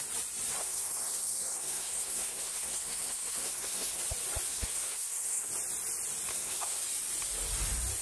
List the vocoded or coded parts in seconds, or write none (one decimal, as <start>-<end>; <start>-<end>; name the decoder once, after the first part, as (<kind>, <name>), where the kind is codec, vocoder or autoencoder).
0.6-4.0 (codec, SNAC); 4.5-5.5; 6.3-6.8